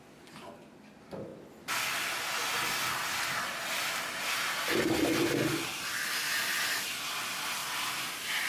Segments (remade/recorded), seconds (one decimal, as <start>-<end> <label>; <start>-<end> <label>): 0.0-8.5 recorded